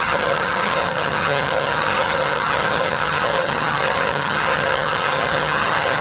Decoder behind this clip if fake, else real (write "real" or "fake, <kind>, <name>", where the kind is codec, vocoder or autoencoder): fake, vocoder, HiFi-GAN